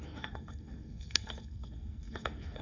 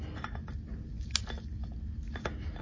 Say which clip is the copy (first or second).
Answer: first